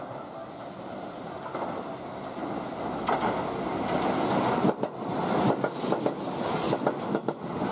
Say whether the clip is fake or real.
real